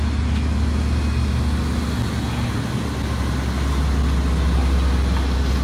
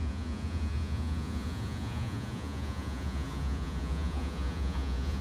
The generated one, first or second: second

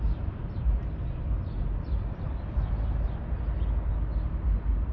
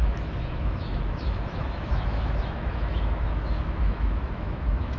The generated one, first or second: second